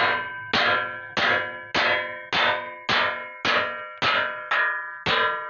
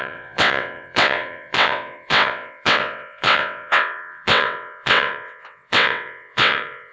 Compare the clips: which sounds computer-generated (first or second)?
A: second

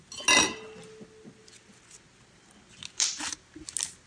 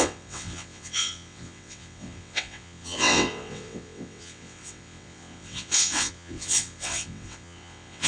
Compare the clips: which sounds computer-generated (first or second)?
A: second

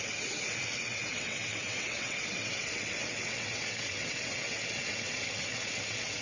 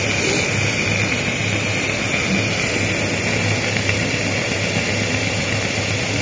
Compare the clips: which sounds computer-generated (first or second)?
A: first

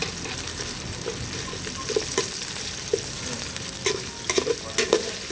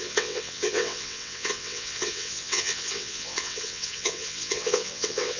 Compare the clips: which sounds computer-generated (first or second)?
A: second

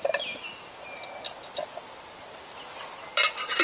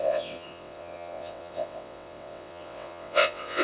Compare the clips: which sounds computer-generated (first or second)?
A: second